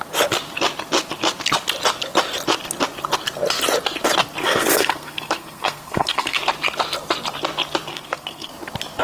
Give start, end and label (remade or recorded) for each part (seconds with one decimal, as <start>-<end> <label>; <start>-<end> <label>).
0.0-4.4 recorded; 4.4-6.4 remade; 6.4-7.9 recorded; 7.9-8.5 remade; 8.5-9.0 recorded